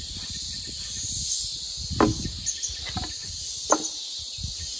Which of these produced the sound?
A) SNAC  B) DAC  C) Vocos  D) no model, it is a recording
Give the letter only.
D